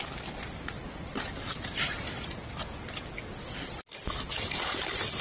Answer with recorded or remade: recorded